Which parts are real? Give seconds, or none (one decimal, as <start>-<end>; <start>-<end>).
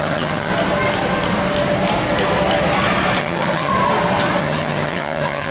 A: 0.5-3.2; 3.7-4.4